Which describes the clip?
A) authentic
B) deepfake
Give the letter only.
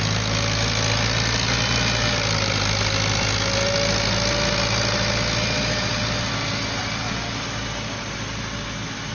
A